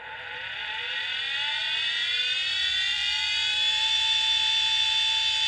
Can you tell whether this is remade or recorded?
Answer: remade